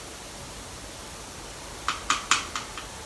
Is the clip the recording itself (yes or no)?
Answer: yes